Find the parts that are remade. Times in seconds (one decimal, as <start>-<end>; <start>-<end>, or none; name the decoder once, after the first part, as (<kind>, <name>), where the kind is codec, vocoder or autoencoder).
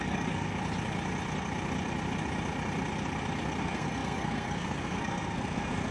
0.0-0.5 (codec, SNAC); 3.6-5.9